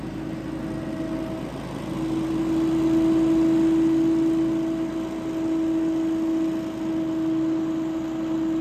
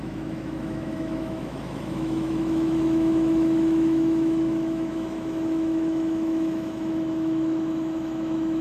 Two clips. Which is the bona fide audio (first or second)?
first